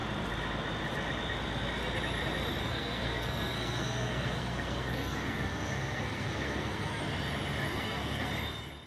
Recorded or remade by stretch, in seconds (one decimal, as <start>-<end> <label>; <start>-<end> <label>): 0.0-2.6 recorded; 2.6-7.0 remade; 7.0-7.7 recorded; 7.7-8.3 remade; 8.3-8.9 recorded